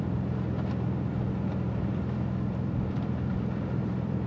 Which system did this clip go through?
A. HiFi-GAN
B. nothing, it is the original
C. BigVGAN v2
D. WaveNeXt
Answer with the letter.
C